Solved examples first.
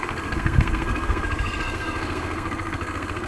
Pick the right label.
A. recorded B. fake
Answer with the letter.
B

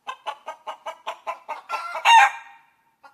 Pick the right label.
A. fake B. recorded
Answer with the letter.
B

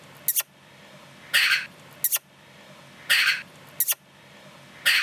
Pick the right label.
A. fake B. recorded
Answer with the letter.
B